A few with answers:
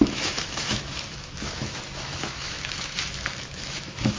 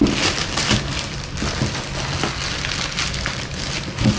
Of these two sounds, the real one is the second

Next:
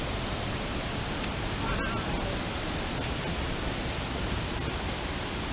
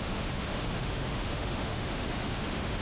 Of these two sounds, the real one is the first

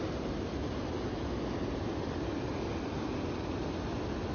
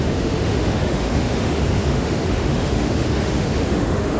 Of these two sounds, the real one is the first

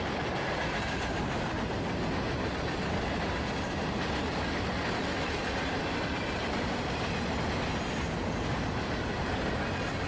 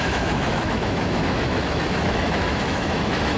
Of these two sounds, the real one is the first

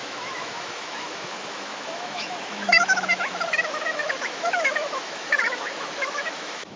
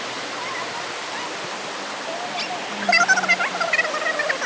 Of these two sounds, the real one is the second